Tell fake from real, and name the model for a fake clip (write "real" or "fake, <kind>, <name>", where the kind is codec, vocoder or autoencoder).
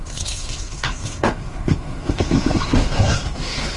fake, codec, SNAC